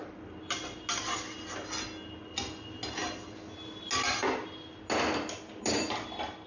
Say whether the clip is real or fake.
real